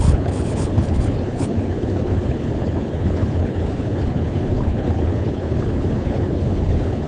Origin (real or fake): fake